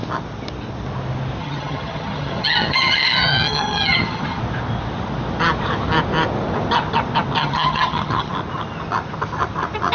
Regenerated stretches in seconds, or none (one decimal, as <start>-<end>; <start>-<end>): 1.4-4.4; 7.4-8.3